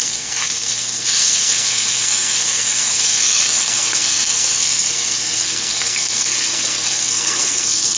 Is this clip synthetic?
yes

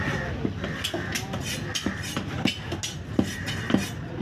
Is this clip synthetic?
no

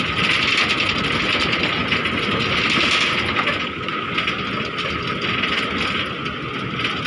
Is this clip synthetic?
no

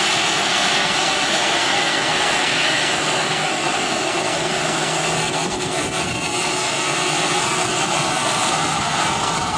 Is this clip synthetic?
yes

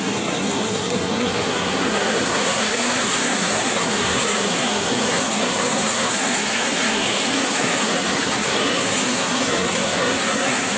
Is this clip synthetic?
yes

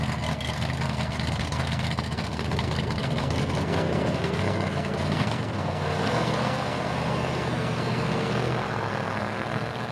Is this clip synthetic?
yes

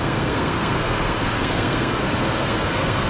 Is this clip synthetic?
yes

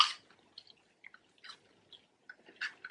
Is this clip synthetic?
no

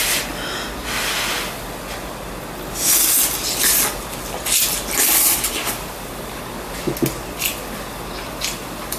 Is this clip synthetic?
no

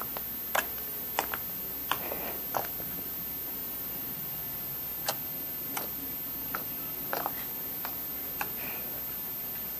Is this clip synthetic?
no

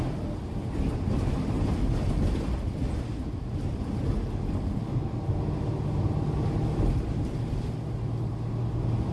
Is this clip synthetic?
no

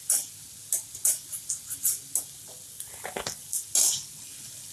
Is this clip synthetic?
no